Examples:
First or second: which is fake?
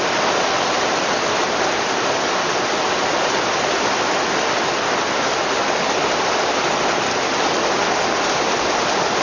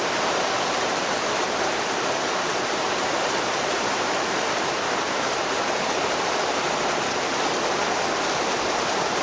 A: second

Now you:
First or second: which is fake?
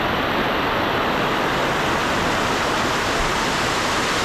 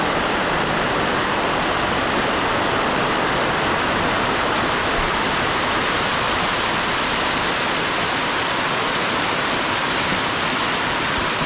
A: second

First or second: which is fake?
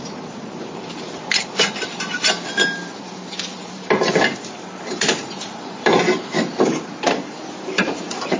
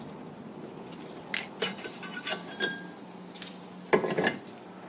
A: first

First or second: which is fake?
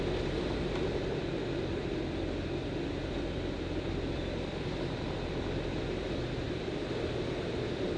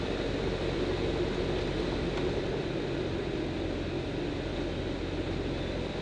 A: first